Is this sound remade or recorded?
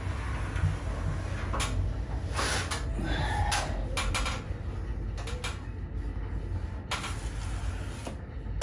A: recorded